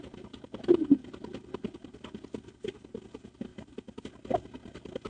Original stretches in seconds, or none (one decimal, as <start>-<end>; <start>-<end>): 0.0-5.1